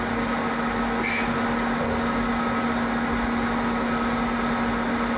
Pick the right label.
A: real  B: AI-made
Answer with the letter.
A